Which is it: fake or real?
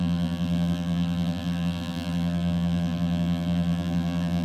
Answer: fake